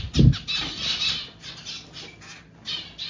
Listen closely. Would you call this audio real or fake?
real